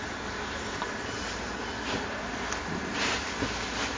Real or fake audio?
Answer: real